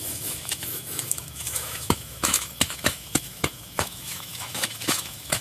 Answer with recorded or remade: remade